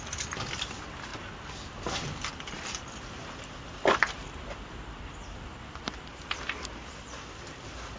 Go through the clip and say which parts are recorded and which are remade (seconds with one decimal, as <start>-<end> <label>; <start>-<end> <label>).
0.0-1.1 remade; 1.1-2.3 recorded; 2.3-8.0 remade